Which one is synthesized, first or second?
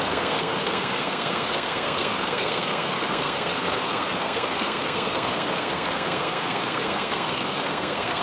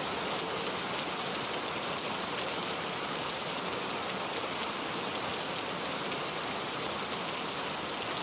first